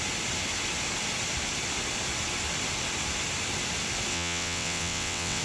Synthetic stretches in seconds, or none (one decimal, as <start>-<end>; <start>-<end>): 4.1-5.4